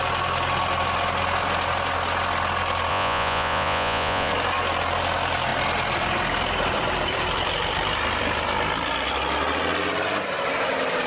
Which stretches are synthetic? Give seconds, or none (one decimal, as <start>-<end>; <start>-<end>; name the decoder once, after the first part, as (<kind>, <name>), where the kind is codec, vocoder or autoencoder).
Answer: 2.9-4.3 (vocoder, Vocos)